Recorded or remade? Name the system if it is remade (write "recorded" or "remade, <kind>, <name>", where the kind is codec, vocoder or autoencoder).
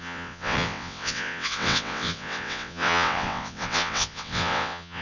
remade, vocoder, WaveNeXt